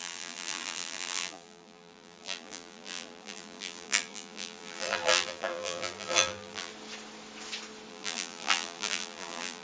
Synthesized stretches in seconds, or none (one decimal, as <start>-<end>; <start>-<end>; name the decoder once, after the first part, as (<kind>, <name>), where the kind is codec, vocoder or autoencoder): 0.0-6.7 (vocoder, BigVGAN v2); 7.9-9.6